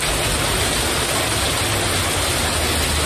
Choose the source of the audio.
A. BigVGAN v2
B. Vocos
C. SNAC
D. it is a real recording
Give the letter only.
D